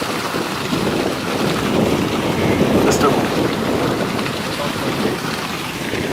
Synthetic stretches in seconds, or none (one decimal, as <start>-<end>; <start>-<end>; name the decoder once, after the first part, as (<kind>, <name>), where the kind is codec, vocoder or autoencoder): none